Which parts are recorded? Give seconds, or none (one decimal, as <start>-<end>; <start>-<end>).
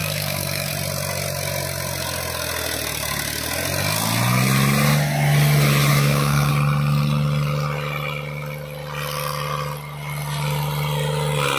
0.7-5.9; 6.5-11.6